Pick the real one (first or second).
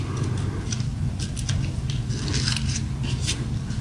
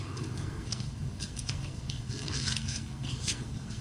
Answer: first